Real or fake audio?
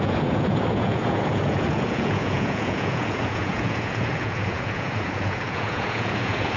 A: fake